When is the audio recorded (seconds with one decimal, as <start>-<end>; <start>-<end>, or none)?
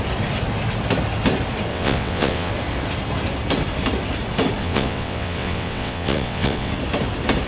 0.0-1.7; 2.5-4.6; 6.7-7.5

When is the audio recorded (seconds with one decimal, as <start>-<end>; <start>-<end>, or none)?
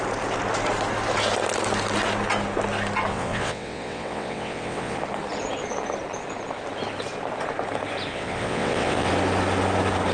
0.0-3.1; 5.0-8.1; 9.1-10.1